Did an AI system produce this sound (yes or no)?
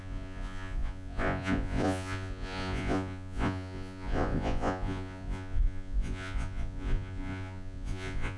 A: yes